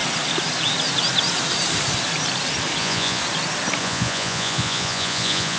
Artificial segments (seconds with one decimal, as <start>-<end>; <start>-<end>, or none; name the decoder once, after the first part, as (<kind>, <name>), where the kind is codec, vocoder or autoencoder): 2.8-3.2 (vocoder, Vocos); 3.8-5.6